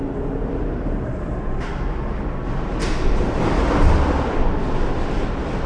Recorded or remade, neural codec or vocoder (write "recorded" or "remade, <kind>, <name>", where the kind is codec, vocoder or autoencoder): recorded